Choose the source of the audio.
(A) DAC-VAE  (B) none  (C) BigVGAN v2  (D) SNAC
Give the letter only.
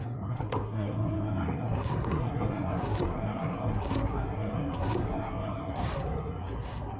D